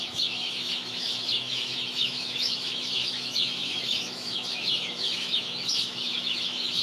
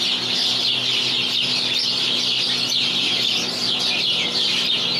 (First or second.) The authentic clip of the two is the second